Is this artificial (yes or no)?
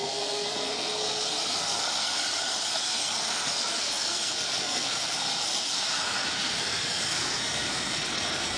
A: yes